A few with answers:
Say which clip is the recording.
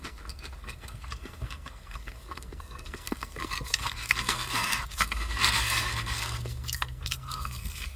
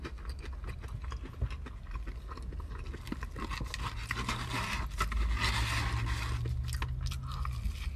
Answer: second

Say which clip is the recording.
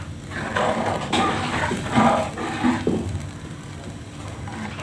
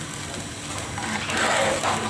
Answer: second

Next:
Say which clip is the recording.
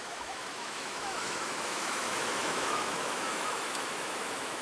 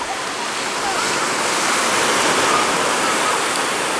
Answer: second